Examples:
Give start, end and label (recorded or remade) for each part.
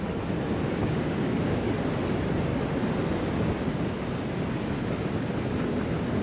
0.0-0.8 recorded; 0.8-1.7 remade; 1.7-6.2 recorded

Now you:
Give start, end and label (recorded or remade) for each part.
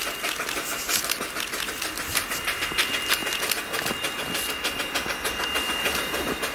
0.0-6.5 recorded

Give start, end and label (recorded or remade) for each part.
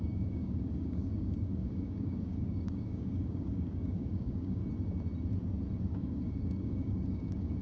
0.0-4.6 remade; 4.6-5.8 recorded; 5.8-7.6 remade